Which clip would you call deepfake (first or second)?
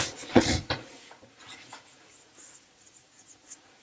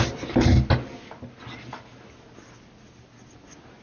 first